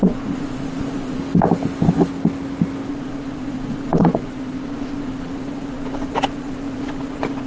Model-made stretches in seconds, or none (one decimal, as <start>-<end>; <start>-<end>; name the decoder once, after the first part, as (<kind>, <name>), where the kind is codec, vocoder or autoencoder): 0.0-1.2 (vocoder, Vocos); 2.9-7.5